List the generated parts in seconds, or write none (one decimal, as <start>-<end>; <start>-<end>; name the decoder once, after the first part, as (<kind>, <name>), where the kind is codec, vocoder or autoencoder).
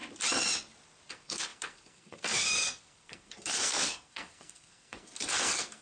1.1-5.8 (codec, SNAC)